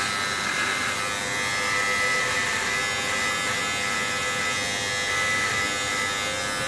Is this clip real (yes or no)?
yes